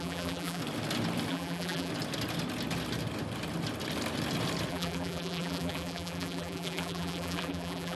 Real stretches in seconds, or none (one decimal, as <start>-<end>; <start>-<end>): 0.6-1.3; 1.9-4.7